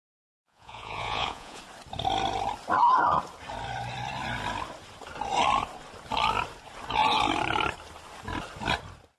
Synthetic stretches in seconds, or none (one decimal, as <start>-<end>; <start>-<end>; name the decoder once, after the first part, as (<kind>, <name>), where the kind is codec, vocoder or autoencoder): 0.0-1.6 (vocoder, Vocos)